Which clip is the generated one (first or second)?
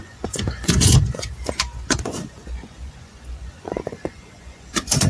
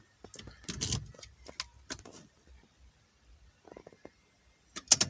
first